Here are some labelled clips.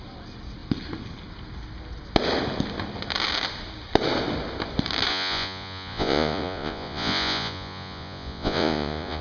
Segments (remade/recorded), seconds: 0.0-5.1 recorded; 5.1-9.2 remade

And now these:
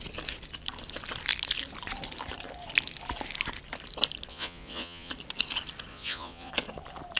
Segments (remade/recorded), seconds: 0.0-4.3 recorded; 4.3-5.1 remade; 5.1-5.9 recorded; 5.9-6.5 remade; 6.5-7.2 recorded

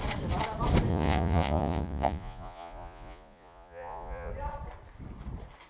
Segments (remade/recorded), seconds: 0.0-0.9 recorded; 0.9-4.3 remade; 4.3-5.7 recorded

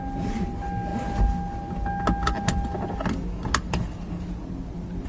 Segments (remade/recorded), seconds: 0.0-5.1 recorded

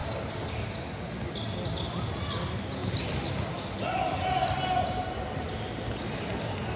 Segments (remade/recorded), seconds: 0.0-6.8 recorded

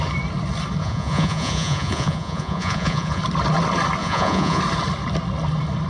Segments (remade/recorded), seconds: 0.0-0.8 recorded; 0.8-3.2 remade; 3.2-4.0 recorded; 4.0-4.6 remade; 4.6-5.9 recorded

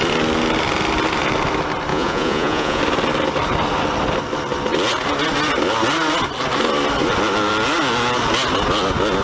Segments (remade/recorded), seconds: 0.0-1.9 recorded; 1.9-2.8 remade; 2.8-9.2 recorded

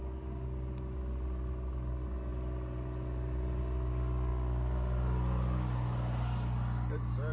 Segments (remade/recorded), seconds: 0.0-7.3 recorded